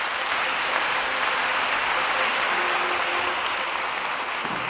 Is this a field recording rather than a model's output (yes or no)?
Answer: yes